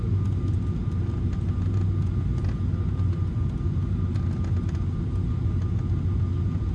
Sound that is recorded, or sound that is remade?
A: recorded